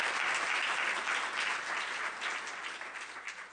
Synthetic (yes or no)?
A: no